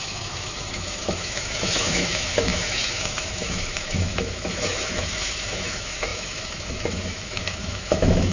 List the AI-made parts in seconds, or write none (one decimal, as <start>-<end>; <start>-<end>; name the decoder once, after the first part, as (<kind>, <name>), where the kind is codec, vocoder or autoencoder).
0.0-8.3 (autoencoder, DAC-VAE)